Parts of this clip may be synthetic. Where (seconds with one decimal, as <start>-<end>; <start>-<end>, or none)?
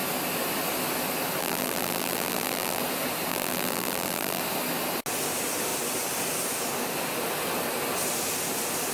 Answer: 1.4-2.8; 3.3-4.4